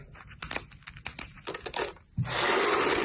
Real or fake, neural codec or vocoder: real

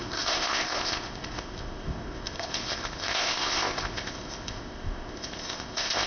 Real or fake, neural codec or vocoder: fake, codec, ZipCodec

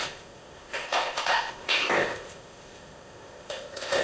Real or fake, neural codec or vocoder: fake, codec, ZipCodec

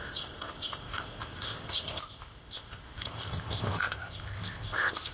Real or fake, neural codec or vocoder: fake, codec, ZipCodec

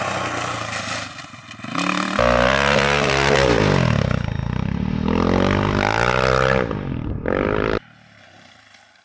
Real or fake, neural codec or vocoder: real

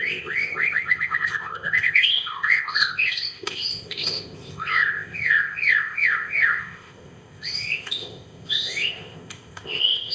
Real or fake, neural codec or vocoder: fake, codec, ZipCodec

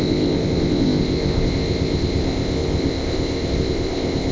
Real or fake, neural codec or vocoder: fake, codec, ZipCodec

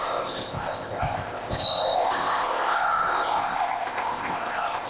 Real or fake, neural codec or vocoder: fake, codec, ZipCodec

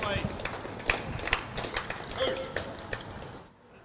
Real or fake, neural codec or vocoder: real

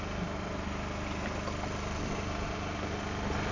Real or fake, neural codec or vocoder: real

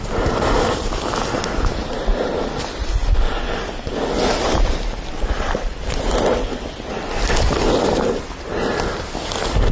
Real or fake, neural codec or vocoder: real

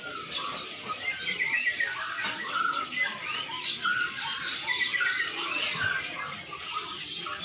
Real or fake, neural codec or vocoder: real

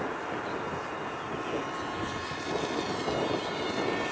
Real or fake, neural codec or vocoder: real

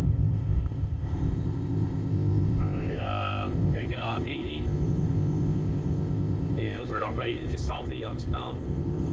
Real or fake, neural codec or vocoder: fake, codec, ZipCodec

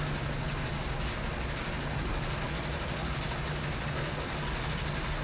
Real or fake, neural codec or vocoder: real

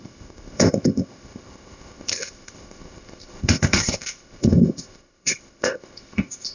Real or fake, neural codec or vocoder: fake, codec, ZipCodec